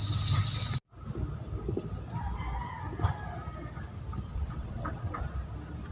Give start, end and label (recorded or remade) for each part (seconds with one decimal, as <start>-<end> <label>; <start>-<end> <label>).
0.0-4.3 recorded; 4.3-5.2 remade; 5.2-5.9 recorded